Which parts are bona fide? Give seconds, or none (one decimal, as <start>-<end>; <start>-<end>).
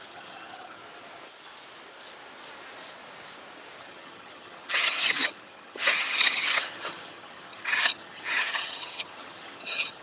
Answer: 0.8-3.8